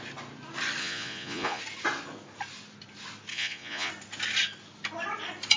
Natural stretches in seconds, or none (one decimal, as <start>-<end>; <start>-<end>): 0.0-0.8; 1.6-3.3; 3.9-5.6